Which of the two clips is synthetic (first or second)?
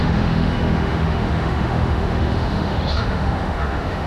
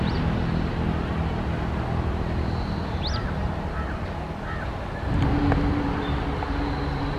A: first